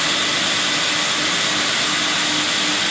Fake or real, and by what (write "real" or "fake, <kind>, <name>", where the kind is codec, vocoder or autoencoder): real